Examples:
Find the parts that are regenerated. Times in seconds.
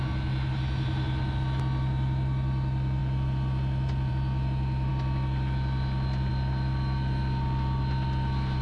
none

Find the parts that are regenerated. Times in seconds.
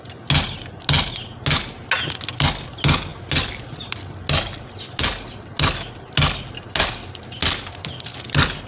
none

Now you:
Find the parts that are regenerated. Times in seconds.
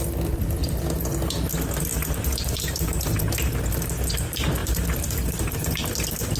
1.9-3.5 (vocoder, BigVGAN v2); 4.6-5.8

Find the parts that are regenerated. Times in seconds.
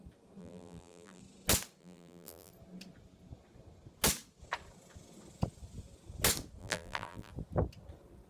0.4-1.2 (vocoder, BigVGAN v2); 1.8-2.5; 6.6-7.3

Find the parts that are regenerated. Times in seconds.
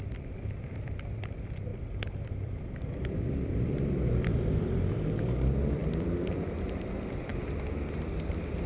0.0-7.3 (vocoder, BigVGAN v2)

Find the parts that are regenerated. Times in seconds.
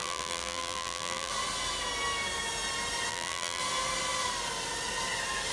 0.0-1.3 (vocoder, BigVGAN v2); 3.1-3.6